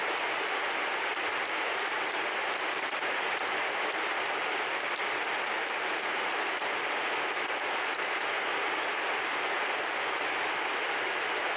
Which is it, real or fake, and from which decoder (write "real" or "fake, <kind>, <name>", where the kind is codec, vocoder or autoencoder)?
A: real